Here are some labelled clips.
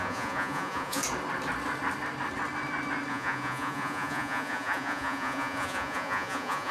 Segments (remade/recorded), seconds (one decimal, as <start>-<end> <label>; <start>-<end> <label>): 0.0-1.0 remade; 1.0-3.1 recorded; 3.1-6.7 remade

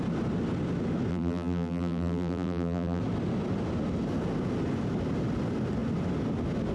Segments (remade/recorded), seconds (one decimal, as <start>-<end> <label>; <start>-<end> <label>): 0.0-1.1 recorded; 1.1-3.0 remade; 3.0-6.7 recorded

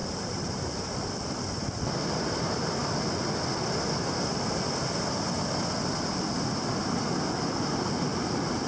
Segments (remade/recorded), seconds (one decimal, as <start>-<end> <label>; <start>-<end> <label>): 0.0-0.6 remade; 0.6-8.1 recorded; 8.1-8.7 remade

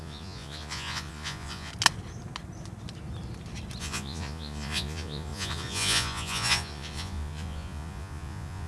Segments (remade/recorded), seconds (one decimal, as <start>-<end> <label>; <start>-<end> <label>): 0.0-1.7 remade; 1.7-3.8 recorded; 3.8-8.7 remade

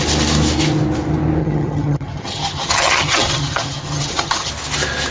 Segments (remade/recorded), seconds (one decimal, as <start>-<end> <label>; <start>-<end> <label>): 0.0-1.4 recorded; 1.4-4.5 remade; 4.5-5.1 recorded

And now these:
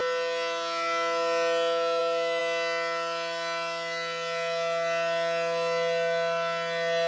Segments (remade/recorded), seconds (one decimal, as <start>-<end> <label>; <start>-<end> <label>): 0.0-7.1 recorded